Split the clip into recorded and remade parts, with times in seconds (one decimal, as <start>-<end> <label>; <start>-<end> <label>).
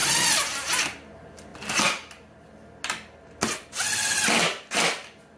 0.0-5.4 recorded